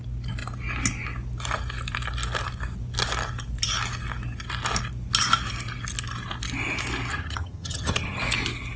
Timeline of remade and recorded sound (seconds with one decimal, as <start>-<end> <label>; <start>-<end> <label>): 0.0-7.1 recorded; 7.1-8.2 remade; 8.2-8.8 recorded

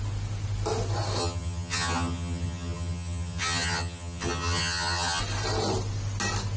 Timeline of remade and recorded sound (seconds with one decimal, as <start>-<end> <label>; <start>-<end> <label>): 0.0-1.2 recorded; 1.2-5.2 remade; 5.2-6.6 recorded

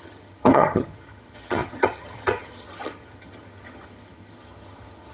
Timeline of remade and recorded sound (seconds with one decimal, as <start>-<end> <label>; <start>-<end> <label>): 0.0-5.1 remade

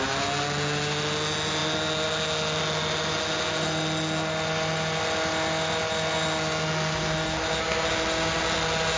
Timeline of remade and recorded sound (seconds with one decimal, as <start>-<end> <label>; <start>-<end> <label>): 0.0-9.0 recorded

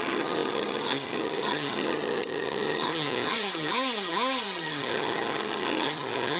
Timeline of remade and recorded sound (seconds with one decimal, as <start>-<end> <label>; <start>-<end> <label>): 0.0-6.4 remade

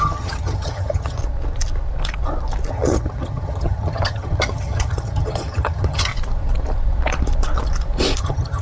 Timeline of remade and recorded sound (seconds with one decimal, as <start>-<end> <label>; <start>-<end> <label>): 0.0-1.2 remade; 1.2-2.7 recorded; 2.7-6.1 remade; 6.1-8.2 recorded; 8.2-8.6 remade

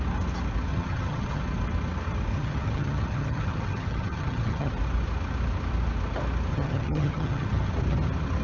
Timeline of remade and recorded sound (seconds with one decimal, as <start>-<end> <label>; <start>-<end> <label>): 0.0-0.7 recorded; 0.7-1.4 remade; 1.4-2.3 recorded; 2.3-4.7 remade; 4.7-6.5 recorded; 6.5-7.7 remade; 7.7-8.4 recorded

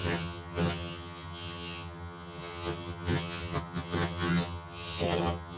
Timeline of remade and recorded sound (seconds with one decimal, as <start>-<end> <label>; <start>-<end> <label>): 0.0-5.6 remade